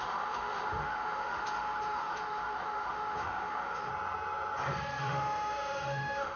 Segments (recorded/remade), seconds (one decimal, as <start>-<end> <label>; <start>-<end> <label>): 0.0-3.9 remade; 3.9-5.0 recorded; 5.0-6.4 remade